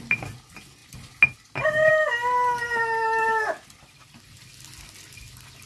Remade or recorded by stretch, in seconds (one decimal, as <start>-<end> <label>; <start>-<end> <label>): 0.0-5.7 recorded